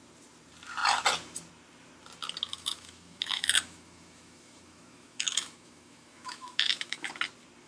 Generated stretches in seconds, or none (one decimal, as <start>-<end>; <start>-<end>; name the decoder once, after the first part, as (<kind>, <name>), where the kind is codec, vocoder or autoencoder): 2.5-7.1 (autoencoder, DAC-VAE)